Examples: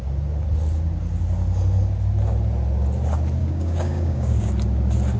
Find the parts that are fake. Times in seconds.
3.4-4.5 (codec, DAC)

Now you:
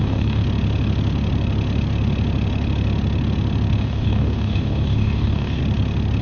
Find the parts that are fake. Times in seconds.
0.0-0.4 (codec, DAC); 3.8-5.6

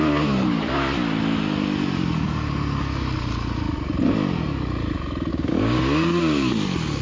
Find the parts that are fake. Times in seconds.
5.3-6.5 (codec, DAC)

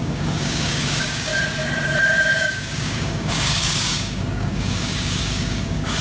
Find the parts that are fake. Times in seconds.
0.0-1.3 (codec, DAC); 2.4-6.0

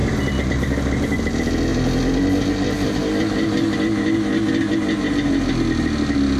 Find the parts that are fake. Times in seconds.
none

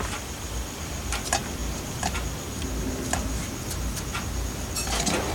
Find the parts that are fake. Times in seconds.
none

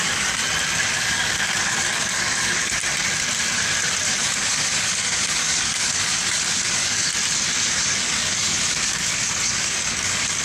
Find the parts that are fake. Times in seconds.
0.0-0.4 (codec, DAC); 0.9-2.8; 4.1-7.1; 7.7-10.4